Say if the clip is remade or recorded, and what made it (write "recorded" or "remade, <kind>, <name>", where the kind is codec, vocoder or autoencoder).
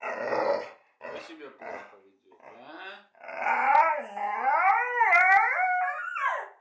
recorded